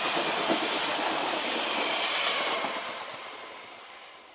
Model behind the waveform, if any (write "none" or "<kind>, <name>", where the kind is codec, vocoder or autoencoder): none